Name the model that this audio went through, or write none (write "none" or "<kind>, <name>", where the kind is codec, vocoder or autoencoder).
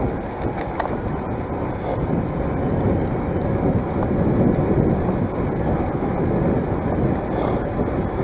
none